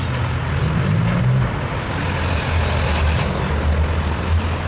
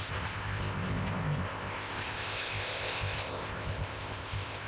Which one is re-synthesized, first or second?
second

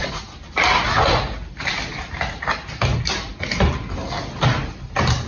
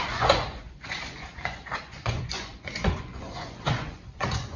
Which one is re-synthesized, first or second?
second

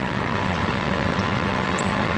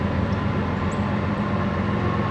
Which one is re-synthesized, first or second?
first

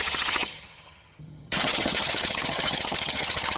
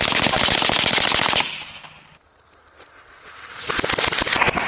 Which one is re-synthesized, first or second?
first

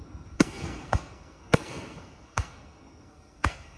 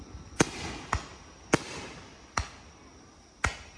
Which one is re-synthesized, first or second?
first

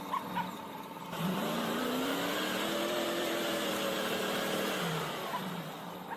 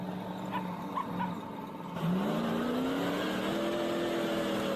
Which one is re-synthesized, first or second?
first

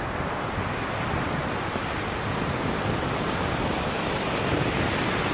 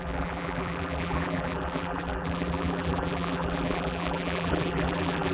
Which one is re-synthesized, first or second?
second